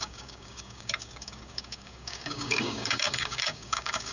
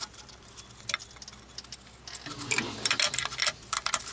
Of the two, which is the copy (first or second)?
first